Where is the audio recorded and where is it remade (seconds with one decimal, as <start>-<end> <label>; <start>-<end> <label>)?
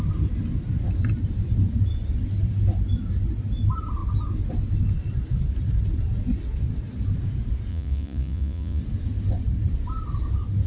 0.0-7.7 recorded; 7.7-8.8 remade; 8.8-10.7 recorded